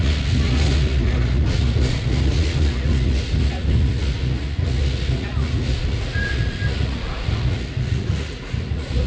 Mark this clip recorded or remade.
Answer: remade